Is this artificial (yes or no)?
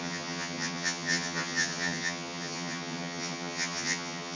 yes